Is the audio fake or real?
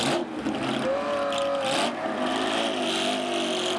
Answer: real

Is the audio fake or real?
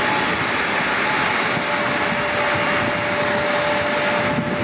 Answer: real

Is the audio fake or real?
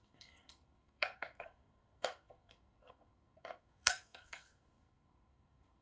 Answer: fake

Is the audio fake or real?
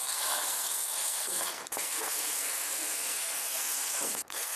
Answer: fake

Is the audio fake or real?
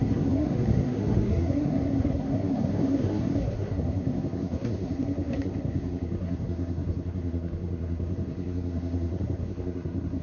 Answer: fake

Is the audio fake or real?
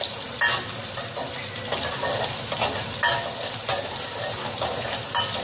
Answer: real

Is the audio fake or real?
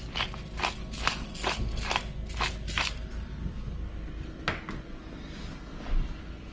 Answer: real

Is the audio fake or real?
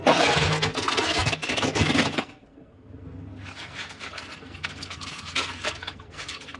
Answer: fake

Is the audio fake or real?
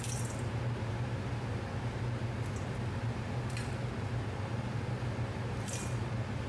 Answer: real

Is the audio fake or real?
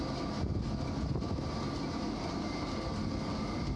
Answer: real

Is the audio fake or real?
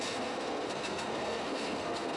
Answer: fake